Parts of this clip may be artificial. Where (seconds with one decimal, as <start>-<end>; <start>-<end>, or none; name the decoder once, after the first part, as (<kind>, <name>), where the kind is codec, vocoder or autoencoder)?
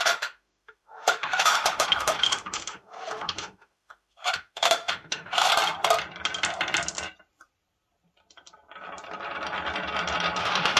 0.0-5.5 (autoencoder, DAC-VAE); 10.4-10.8